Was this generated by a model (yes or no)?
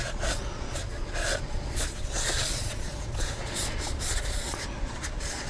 yes